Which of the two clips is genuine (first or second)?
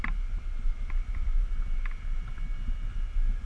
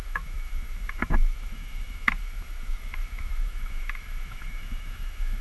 first